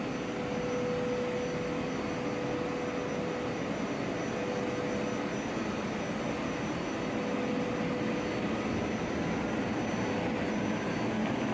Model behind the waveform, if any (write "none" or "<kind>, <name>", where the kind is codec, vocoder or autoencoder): none